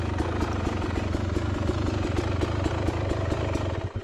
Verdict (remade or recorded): recorded